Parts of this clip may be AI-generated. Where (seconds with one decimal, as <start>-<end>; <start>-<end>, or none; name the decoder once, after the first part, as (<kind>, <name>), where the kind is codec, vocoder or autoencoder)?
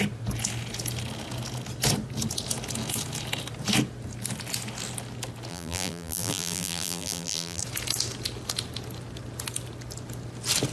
5.5-7.6 (vocoder, BigVGAN v2)